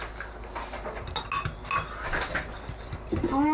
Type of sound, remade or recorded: recorded